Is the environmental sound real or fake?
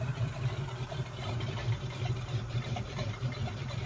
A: fake